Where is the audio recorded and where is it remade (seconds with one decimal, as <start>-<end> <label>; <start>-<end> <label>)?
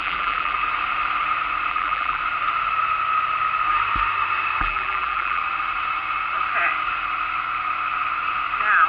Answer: 0.0-0.6 remade; 0.6-1.7 recorded; 1.7-2.2 remade; 2.2-4.6 recorded; 4.6-5.4 remade; 5.4-8.9 recorded